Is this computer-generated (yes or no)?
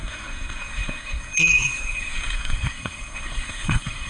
yes